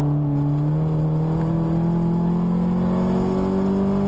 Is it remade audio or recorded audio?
recorded